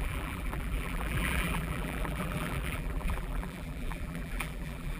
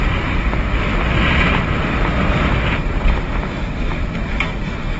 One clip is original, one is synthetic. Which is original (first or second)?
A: second